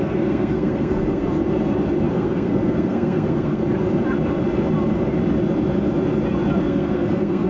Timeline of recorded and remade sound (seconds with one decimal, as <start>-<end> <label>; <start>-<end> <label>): 0.0-1.3 remade; 1.3-2.1 recorded; 2.1-3.6 remade; 3.6-6.6 recorded; 6.6-7.5 remade